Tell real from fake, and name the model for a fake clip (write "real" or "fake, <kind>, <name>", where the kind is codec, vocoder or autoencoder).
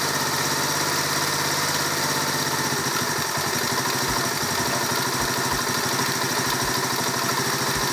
real